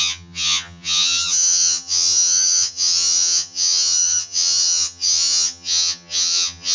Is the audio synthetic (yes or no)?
yes